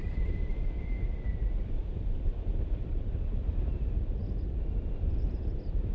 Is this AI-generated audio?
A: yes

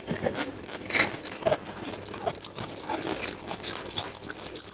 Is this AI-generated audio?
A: no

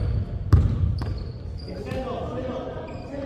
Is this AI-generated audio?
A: yes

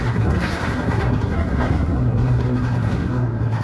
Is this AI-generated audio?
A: yes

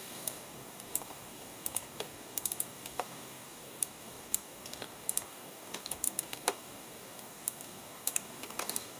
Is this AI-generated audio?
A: yes